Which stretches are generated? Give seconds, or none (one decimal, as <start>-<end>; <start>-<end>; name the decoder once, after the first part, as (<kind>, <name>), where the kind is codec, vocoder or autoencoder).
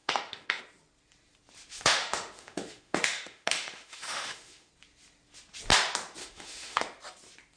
0.0-0.6 (autoencoder, DAC-VAE); 1.7-4.7; 6.2-6.8